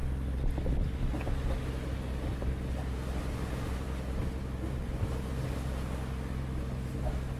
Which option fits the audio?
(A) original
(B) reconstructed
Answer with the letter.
A